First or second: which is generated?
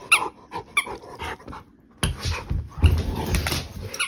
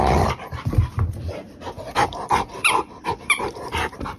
second